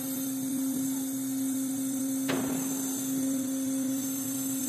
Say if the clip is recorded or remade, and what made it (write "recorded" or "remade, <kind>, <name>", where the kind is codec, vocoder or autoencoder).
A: recorded